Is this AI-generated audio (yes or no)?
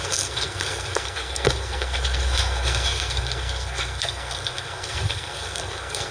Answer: yes